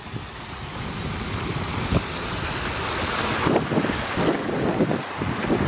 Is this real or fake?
real